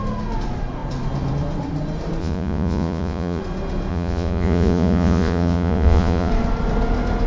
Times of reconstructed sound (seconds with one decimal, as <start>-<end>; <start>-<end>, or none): 2.2-3.4; 3.9-6.3